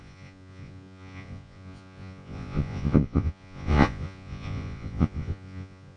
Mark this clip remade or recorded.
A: remade